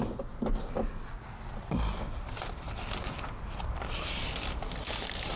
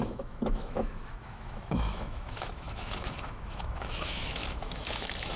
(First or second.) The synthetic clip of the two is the second